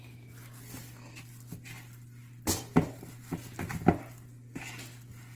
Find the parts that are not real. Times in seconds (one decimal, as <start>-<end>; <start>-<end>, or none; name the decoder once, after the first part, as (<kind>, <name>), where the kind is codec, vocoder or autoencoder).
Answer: none